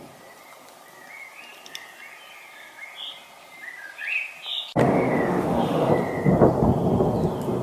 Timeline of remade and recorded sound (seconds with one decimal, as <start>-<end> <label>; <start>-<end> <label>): 0.0-4.8 recorded; 4.8-5.9 remade; 5.9-7.6 recorded